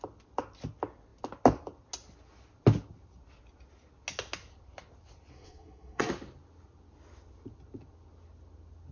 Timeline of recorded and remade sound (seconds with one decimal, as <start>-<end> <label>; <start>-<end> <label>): 0.0-5.3 recorded; 5.3-6.1 remade; 6.1-8.9 recorded

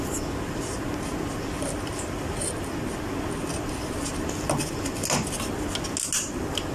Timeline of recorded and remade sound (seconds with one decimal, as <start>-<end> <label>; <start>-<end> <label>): 0.0-6.7 recorded

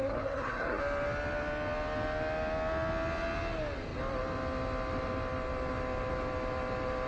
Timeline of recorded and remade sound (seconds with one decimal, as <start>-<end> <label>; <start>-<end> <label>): 0.0-0.8 remade; 0.8-7.1 recorded

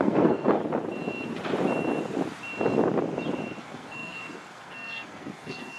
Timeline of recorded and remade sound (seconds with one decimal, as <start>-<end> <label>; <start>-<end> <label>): 0.0-0.6 remade; 0.6-3.6 recorded; 3.6-5.8 remade

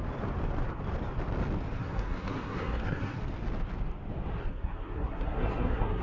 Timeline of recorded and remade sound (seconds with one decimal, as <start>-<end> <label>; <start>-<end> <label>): 0.0-1.8 recorded; 1.8-3.2 remade; 3.2-4.4 recorded; 4.4-6.0 remade

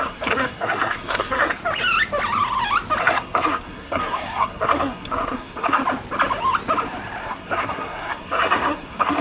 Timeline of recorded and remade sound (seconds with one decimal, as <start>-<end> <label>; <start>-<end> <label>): 0.0-1.6 remade; 1.6-3.0 recorded; 3.0-5.8 remade; 5.8-7.2 recorded; 7.2-9.2 remade

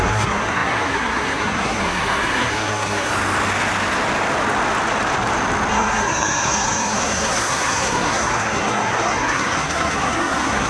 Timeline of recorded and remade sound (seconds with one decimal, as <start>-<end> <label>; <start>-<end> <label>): 0.0-3.1 remade; 3.1-5.7 recorded; 5.7-10.7 remade